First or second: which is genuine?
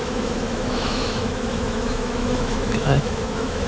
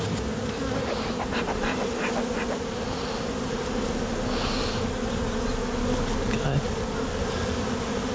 second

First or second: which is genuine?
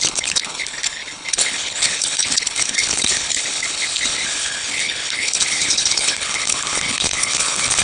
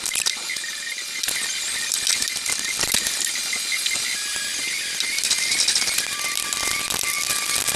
second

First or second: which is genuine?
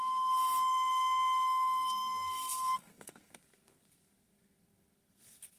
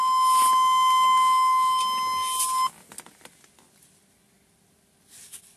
second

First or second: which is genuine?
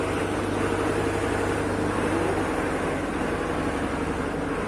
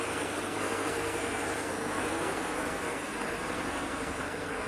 first